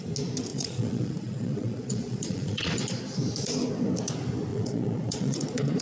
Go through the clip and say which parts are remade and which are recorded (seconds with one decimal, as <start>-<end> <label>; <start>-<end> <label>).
0.0-0.5 recorded; 0.5-3.0 remade; 3.0-4.5 recorded; 4.5-5.8 remade

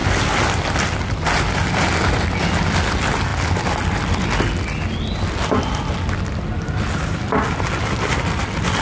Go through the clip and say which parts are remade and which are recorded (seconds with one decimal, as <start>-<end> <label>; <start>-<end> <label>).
0.0-8.8 recorded